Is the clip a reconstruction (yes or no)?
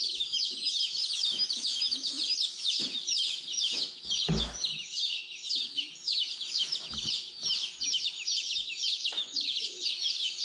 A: yes